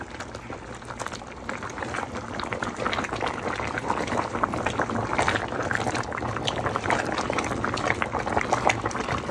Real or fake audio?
fake